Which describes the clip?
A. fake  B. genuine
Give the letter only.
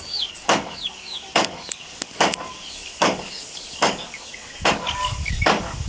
A